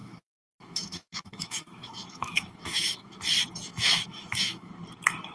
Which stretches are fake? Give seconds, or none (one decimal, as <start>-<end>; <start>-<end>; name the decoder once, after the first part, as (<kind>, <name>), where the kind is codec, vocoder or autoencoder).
0.0-3.2 (autoencoder, DAC-VAE); 3.7-4.7